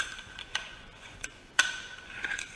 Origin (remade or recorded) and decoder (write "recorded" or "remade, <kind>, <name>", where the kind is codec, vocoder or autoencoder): remade, vocoder, Vocos